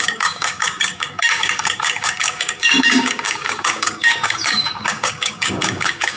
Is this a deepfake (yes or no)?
yes